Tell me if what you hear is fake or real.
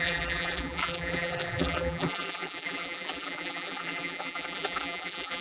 fake